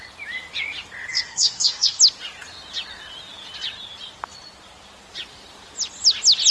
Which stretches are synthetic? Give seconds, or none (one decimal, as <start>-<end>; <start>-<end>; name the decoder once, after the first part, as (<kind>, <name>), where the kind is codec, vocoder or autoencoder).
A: 1.1-2.0 (codec, SNAC)